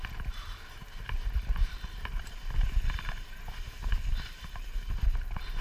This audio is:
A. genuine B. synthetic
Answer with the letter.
B